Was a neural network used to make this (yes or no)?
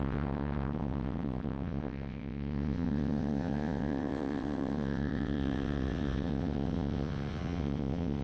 yes